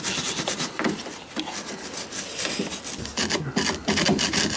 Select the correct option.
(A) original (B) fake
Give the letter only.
A